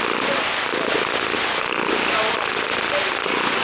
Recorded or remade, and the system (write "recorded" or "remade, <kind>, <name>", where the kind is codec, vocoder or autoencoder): recorded